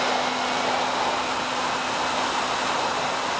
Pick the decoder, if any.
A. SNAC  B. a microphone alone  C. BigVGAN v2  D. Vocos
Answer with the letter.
B